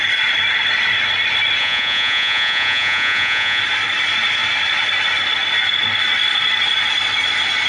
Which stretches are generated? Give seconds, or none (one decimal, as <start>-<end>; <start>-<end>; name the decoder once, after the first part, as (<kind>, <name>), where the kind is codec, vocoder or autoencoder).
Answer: 1.6-3.6 (vocoder, Vocos)